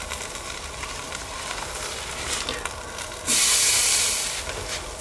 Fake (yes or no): no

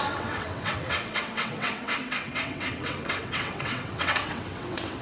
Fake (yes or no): yes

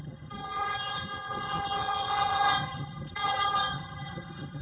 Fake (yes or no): yes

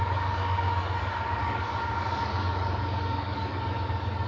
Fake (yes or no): yes